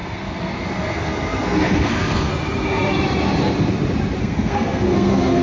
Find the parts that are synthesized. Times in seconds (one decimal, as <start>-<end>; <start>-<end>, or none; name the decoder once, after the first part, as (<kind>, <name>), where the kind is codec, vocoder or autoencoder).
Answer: 0.0-2.3 (codec, SNAC); 4.2-5.4

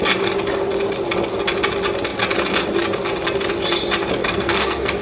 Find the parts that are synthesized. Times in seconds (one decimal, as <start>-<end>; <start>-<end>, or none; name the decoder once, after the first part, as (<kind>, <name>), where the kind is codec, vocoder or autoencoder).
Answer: 4.2-5.0 (codec, SNAC)

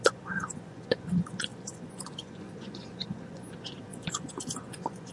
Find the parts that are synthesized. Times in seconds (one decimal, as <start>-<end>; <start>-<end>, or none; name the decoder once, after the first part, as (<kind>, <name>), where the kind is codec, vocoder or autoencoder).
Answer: 0.0-5.1 (vocoder, Vocos)

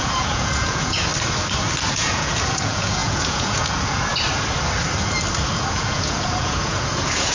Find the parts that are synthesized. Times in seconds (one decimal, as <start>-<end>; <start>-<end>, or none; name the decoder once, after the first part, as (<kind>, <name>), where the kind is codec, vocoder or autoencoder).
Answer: 0.0-1.1 (vocoder, Vocos); 1.9-4.1; 5.5-7.3